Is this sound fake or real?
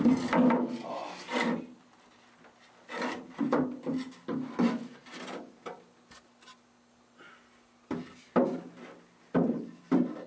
real